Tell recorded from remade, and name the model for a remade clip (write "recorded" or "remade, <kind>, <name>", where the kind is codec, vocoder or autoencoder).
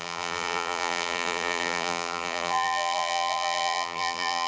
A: remade, vocoder, BigVGAN v2